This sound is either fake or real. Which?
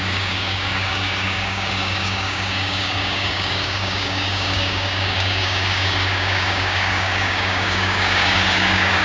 fake